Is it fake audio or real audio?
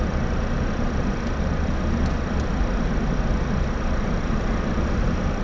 real